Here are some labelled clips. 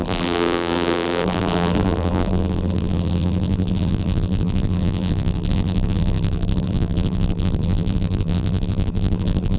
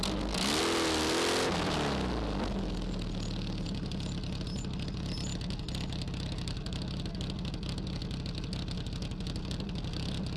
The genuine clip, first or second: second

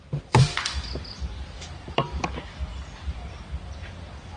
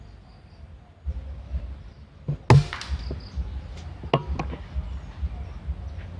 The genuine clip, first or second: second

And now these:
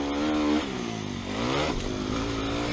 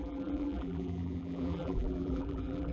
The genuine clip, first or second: first